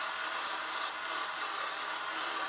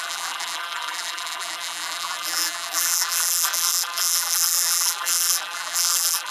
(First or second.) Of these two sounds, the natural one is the first